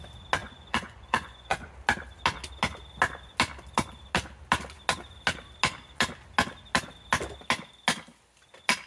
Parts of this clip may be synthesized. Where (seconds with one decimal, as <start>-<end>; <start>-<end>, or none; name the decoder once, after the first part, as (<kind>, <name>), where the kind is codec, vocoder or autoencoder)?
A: 0.4-1.7 (vocoder, Vocos)